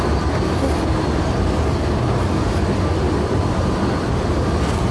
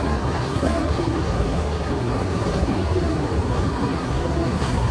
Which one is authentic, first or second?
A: first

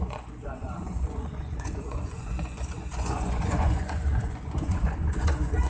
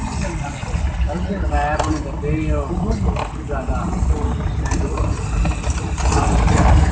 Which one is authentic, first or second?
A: second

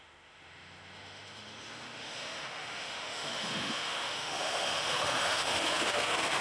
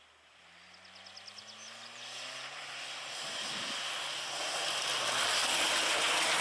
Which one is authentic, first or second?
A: second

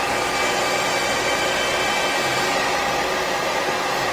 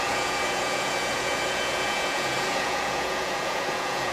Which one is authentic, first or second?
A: first